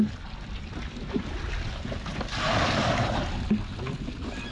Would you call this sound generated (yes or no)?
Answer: no